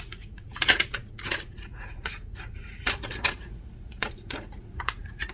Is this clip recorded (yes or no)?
no